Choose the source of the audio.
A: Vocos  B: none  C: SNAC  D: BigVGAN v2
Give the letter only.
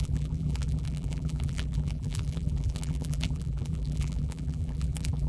D